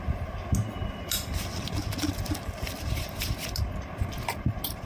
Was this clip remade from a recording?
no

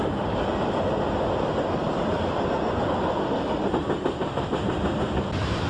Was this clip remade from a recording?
no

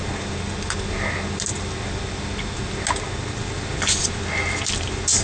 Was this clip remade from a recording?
no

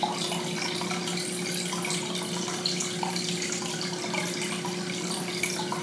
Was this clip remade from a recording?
no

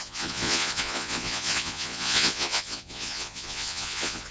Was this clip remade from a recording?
yes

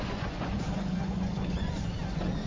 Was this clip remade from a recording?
yes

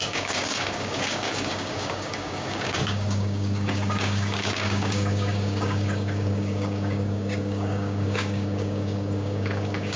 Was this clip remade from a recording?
yes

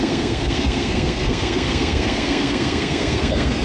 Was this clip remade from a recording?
yes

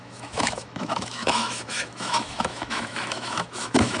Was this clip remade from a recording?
yes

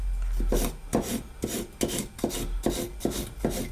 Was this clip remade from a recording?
no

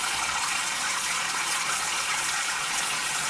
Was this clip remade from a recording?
yes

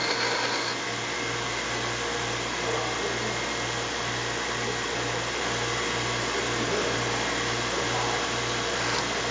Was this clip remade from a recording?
no